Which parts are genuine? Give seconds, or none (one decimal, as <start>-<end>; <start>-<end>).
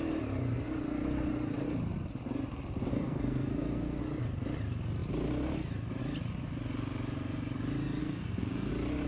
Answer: 0.0-2.9; 4.0-8.0; 8.7-9.1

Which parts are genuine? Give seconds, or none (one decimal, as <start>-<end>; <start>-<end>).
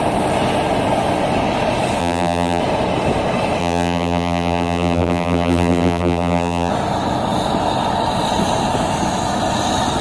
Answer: 0.0-2.0; 2.6-3.6; 6.7-10.0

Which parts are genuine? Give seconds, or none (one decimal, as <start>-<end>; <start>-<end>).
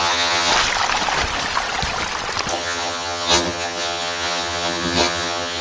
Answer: 0.5-2.5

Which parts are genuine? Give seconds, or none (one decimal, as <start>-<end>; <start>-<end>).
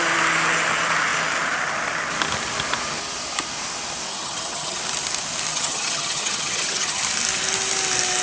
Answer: 0.0-4.1; 4.8-5.5; 7.0-8.2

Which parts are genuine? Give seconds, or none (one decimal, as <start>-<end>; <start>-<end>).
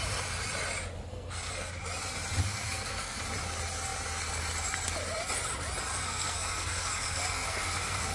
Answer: 0.0-1.1; 1.7-2.4; 3.2-5.9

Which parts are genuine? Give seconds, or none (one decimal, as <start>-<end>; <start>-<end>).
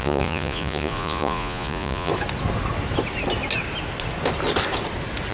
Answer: 2.1-5.3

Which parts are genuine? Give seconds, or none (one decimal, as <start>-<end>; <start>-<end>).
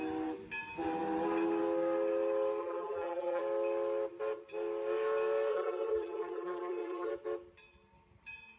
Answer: 0.0-2.6; 3.4-5.5; 7.1-8.6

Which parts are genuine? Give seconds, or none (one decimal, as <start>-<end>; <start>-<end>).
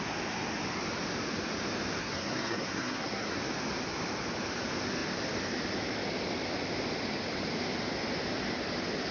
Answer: 0.0-2.0; 3.4-9.1